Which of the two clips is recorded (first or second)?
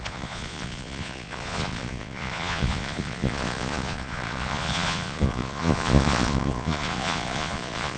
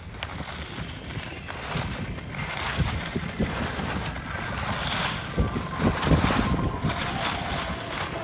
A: second